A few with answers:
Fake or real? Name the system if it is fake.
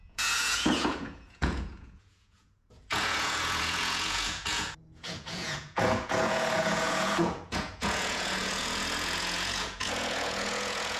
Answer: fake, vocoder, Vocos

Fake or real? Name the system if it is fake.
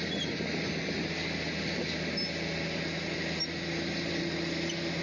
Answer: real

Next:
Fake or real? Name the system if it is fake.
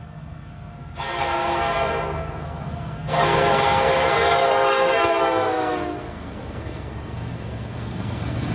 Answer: fake, codec, SNAC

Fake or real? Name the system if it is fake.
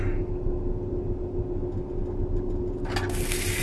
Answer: real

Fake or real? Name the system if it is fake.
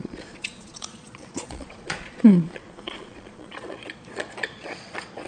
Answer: fake, vocoder, Vocos